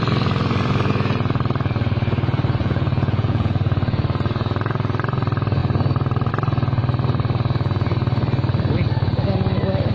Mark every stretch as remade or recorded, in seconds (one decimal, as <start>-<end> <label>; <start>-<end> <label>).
0.0-2.6 recorded; 2.6-3.5 remade; 3.5-9.9 recorded